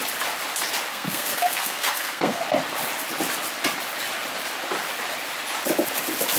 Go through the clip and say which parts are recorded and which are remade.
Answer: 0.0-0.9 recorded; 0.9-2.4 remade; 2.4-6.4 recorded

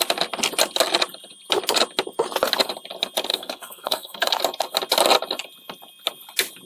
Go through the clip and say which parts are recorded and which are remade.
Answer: 0.0-3.3 recorded; 3.3-4.3 remade; 4.3-6.7 recorded

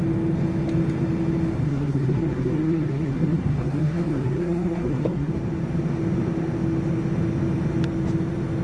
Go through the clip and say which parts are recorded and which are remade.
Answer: 0.0-1.6 recorded; 1.6-5.3 remade; 5.3-8.6 recorded